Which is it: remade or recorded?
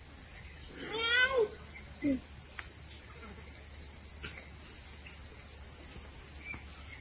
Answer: recorded